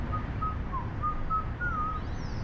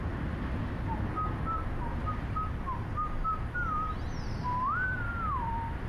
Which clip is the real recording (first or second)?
first